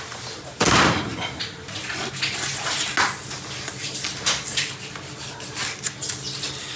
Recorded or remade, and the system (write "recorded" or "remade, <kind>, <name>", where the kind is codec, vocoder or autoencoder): recorded